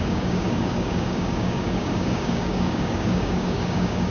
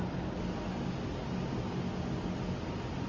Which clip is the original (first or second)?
second